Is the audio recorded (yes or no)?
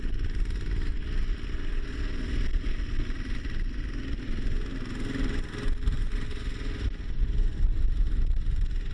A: yes